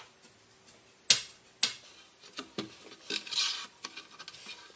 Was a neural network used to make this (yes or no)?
no